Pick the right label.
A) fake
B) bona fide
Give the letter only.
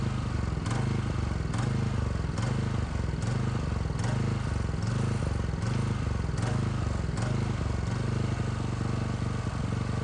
B